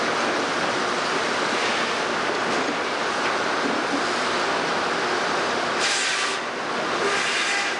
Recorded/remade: recorded